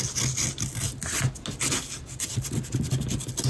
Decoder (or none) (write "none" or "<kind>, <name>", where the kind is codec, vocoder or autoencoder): none